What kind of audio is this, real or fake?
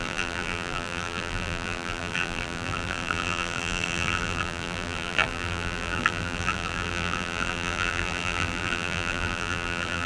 fake